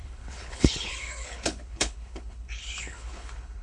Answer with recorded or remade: remade